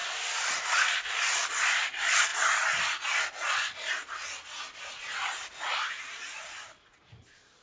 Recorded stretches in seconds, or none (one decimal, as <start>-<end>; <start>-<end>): 0.0-7.6